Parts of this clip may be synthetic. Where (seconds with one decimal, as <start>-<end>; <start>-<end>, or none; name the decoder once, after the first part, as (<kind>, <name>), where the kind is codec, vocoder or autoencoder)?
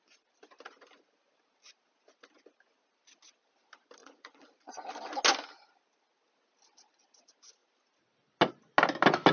4.0-4.9 (vocoder, Vocos)